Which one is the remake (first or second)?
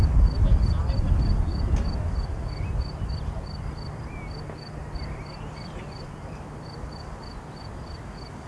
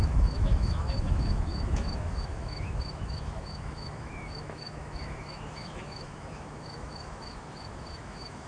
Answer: second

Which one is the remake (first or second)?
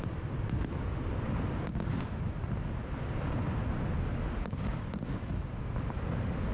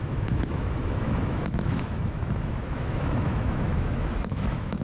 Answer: second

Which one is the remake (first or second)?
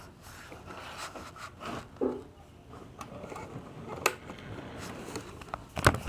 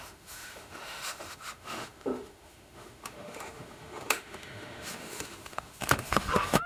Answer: second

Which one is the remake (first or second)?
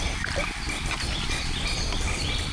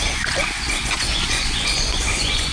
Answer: second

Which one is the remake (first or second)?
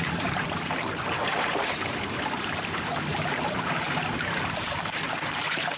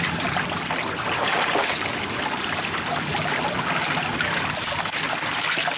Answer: first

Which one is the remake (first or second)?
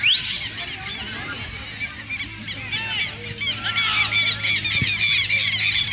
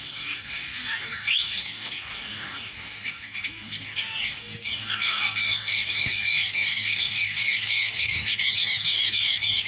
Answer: second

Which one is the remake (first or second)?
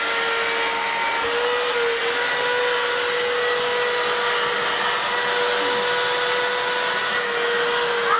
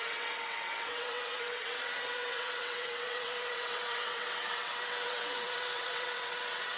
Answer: second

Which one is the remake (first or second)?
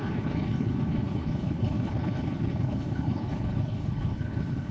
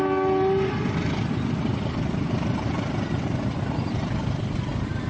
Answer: first